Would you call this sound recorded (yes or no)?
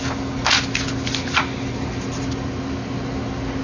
yes